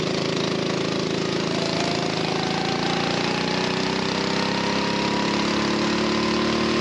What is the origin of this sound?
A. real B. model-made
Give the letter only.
A